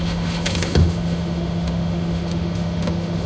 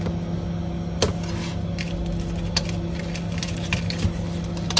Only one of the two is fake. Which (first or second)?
first